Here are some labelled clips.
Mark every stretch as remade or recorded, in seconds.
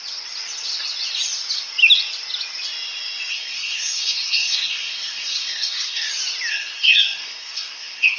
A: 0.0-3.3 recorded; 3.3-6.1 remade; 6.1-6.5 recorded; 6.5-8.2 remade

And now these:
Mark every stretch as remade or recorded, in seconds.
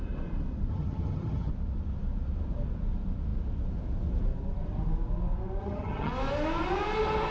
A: 0.0-0.7 recorded; 0.7-1.5 remade; 1.5-5.6 recorded; 5.6-6.1 remade; 6.1-7.3 recorded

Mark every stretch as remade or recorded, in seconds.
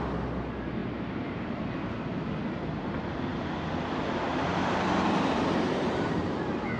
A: 0.0-0.8 recorded; 0.8-1.6 remade; 1.6-4.3 recorded; 4.3-6.2 remade; 6.2-6.8 recorded